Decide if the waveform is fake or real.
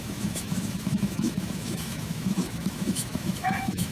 fake